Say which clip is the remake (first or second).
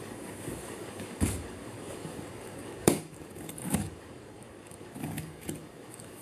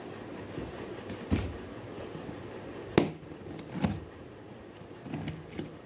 first